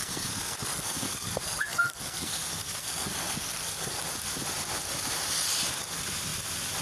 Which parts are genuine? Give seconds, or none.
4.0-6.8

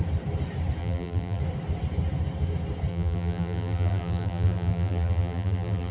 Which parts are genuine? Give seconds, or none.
0.0-0.8; 1.4-2.9

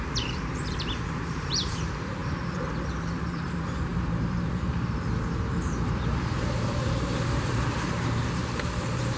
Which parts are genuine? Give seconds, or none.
none

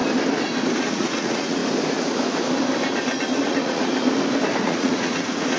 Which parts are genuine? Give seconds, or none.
0.0-0.9; 1.6-3.5; 3.9-4.6

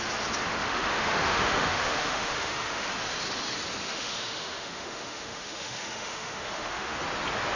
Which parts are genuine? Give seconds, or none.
0.0-0.5; 2.9-3.8; 7.0-7.6